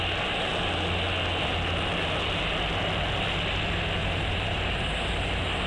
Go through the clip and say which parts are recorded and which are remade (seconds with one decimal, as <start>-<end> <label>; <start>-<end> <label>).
0.0-4.0 recorded; 4.0-4.7 remade; 4.7-5.7 recorded